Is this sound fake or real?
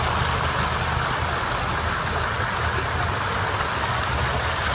real